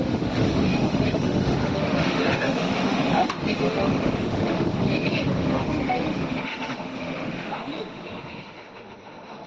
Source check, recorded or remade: remade